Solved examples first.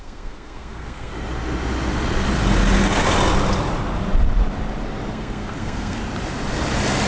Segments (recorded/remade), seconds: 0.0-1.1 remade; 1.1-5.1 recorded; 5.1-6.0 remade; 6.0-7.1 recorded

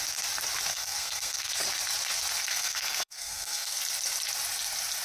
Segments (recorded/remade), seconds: 0.0-0.7 recorded; 0.7-1.5 remade; 1.5-2.5 recorded; 2.5-3.8 remade; 3.8-5.0 recorded

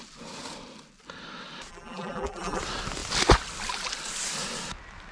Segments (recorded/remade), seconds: 0.0-1.7 recorded; 1.7-2.6 remade; 2.6-5.1 recorded

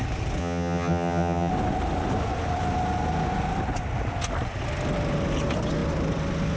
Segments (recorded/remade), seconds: 0.0-0.4 recorded; 0.4-1.5 remade; 1.5-6.6 recorded

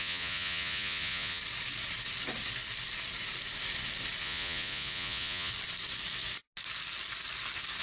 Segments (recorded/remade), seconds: 0.0-1.4 remade; 1.4-4.2 recorded; 4.2-5.5 remade; 5.5-7.8 recorded

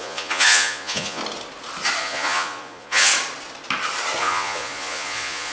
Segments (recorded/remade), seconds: 0.0-1.2 remade; 1.2-2.0 recorded; 2.0-3.1 remade; 3.1-4.2 recorded; 4.2-5.5 remade

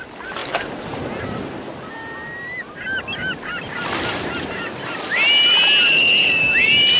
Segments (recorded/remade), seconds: 0.0-0.4 recorded; 0.4-1.4 remade; 1.4-7.0 recorded

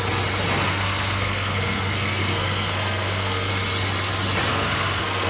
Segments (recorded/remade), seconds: 0.0-0.7 recorded; 0.7-3.5 remade; 3.5-4.5 recorded; 4.5-5.3 remade